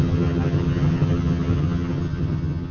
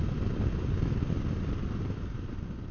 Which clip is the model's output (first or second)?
first